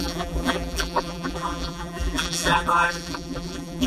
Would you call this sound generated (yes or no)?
yes